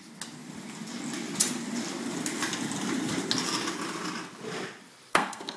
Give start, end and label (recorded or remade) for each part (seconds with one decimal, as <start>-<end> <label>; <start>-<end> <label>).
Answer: 0.0-5.1 recorded; 5.1-5.6 remade

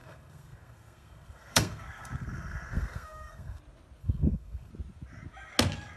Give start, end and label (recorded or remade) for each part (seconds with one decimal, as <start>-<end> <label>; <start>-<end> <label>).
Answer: 0.0-3.6 remade; 3.6-4.0 recorded; 4.0-4.7 remade; 4.7-6.0 recorded

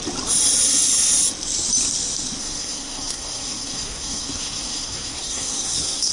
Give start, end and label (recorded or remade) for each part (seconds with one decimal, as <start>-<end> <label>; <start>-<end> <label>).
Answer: 0.0-2.4 recorded; 2.4-6.1 remade

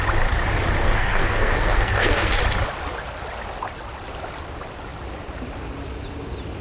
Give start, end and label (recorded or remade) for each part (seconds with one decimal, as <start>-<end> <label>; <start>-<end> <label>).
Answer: 0.0-0.8 recorded; 0.8-2.4 remade; 2.4-6.6 recorded

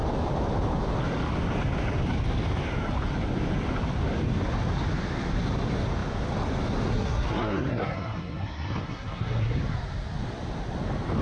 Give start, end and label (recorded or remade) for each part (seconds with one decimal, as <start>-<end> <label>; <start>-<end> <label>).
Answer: 0.0-6.9 recorded; 6.9-9.6 remade; 9.6-11.2 recorded

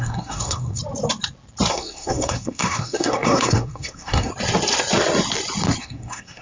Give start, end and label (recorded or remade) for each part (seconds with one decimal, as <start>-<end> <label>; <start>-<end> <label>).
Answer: 0.0-0.8 remade; 0.8-1.7 recorded; 1.7-4.3 remade; 4.3-5.8 recorded; 5.8-6.4 remade